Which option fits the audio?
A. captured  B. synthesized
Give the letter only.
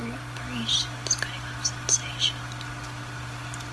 A